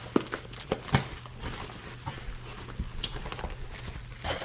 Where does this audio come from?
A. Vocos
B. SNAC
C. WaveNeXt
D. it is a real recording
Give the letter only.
D